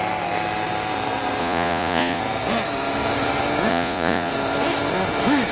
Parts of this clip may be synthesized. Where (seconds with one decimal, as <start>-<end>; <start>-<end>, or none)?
1.4-2.2; 3.7-4.3